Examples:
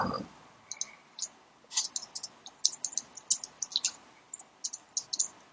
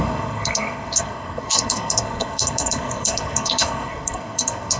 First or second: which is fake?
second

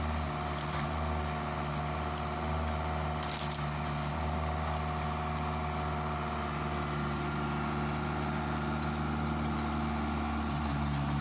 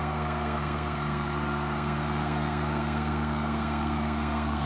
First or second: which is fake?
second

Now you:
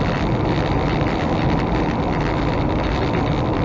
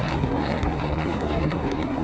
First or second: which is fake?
second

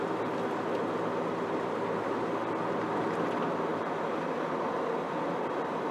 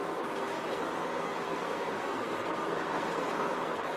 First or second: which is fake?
second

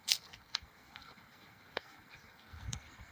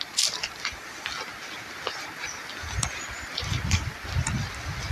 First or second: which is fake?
first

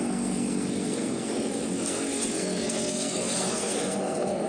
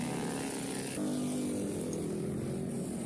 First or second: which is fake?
first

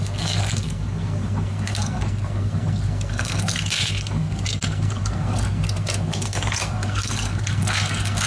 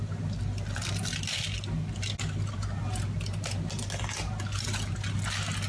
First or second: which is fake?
first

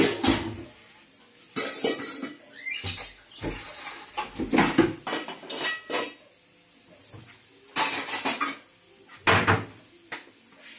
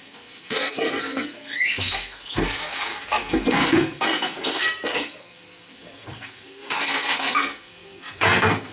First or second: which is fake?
second